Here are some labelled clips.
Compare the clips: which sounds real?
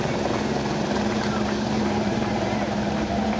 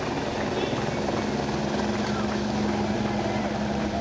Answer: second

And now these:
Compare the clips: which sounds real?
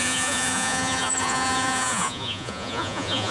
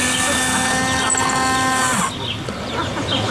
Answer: second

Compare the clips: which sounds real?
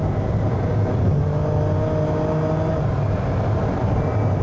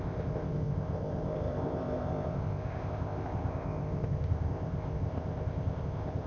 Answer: first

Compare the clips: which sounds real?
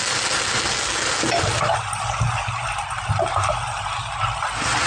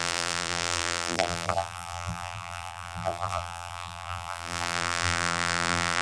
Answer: first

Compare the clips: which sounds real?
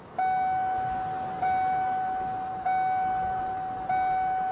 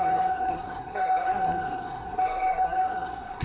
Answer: first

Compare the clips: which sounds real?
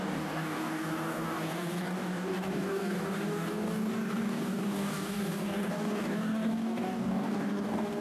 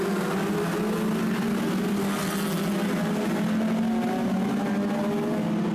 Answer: second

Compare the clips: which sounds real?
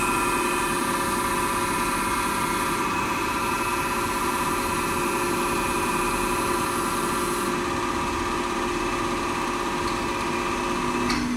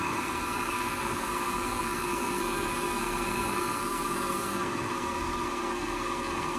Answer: first